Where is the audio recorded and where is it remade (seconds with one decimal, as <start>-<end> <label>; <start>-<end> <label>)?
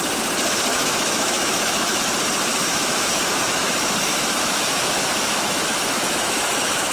0.0-0.7 recorded; 0.7-2.0 remade; 2.0-2.5 recorded; 2.5-6.9 remade